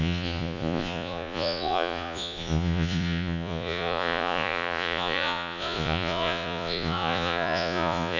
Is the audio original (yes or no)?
no